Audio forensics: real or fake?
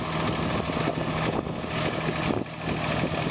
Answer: real